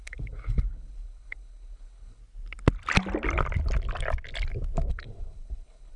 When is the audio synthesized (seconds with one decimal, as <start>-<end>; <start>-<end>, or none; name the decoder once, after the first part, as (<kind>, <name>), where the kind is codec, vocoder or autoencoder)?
0.0-2.2 (codec, HILCodec); 4.9-6.0